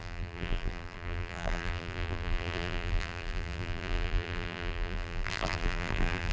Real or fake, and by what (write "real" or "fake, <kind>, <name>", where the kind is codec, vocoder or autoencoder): fake, vocoder, BigVGAN v2